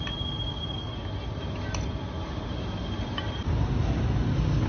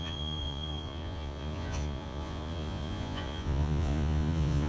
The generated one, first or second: second